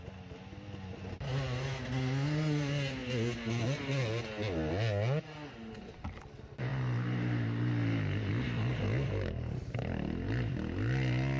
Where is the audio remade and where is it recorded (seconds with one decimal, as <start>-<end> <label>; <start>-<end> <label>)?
0.0-11.4 recorded